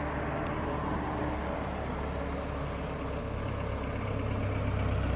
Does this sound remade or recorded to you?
recorded